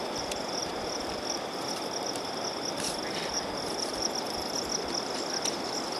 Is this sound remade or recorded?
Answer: remade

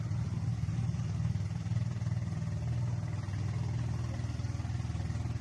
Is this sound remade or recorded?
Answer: recorded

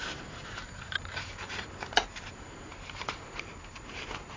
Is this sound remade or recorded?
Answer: remade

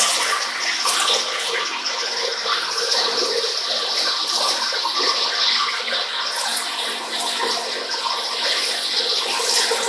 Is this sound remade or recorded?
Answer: recorded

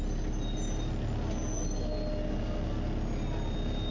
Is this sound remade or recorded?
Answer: recorded